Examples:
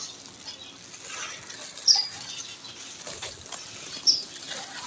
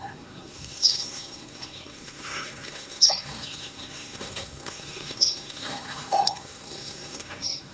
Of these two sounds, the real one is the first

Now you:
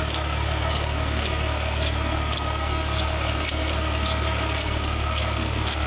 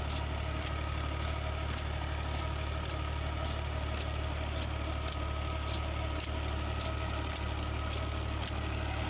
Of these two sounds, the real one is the second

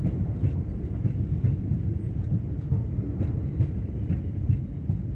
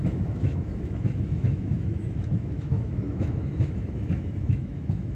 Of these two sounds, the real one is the first